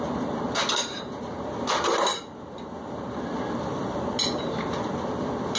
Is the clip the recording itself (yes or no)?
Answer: yes